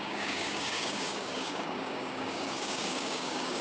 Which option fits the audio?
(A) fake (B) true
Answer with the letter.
A